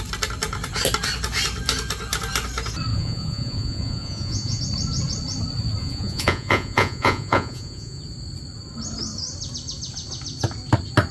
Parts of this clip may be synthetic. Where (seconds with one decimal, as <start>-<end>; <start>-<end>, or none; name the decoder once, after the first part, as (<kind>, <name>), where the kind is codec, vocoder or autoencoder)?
2.9-4.6 (vocoder, Vocos); 5.8-8.0